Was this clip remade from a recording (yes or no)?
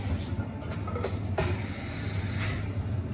no